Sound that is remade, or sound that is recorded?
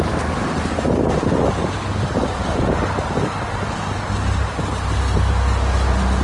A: recorded